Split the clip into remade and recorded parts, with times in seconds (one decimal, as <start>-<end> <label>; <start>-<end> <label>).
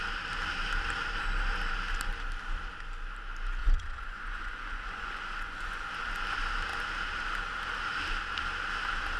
0.0-3.6 recorded; 3.6-5.9 remade; 5.9-9.2 recorded